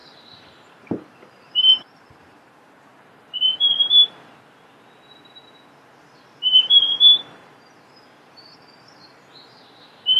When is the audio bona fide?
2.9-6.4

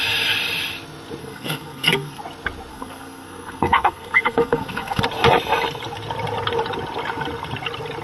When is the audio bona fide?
0.0-1.2; 2.2-2.7; 5.0-8.0

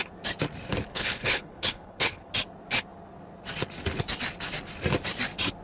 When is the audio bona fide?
0.0-0.9; 2.3-5.6

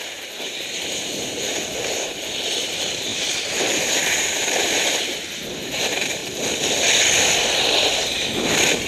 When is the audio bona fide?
1.5-2.5; 6.2-8.1